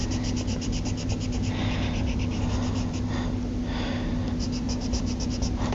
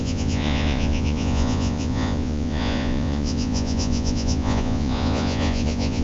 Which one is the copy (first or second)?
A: second